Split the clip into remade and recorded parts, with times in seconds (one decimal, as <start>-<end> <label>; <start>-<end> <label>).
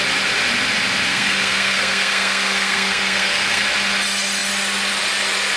0.0-1.1 recorded; 1.1-3.6 remade; 3.6-5.6 recorded